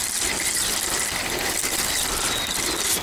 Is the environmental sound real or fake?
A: fake